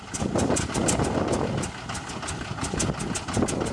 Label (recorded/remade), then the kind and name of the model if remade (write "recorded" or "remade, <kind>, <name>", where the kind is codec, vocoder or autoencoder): recorded